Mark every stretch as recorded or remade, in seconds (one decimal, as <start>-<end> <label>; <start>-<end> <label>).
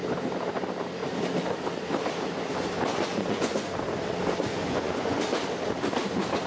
0.0-2.9 recorded; 2.9-3.7 remade; 3.7-4.5 recorded; 4.5-5.2 remade; 5.2-6.5 recorded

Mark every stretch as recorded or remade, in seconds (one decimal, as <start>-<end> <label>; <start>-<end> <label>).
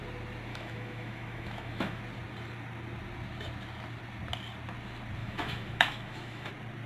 0.0-0.5 recorded; 0.5-2.0 remade; 2.0-5.2 recorded; 5.2-6.5 remade; 6.5-6.9 recorded